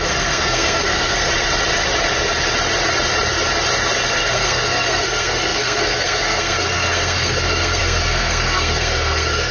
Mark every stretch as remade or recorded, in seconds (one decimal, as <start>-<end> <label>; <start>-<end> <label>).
0.0-1.3 remade; 1.3-4.2 recorded; 4.2-9.5 remade